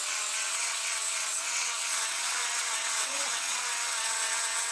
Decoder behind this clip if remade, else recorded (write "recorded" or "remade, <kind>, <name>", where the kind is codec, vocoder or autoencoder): remade, vocoder, WaveNeXt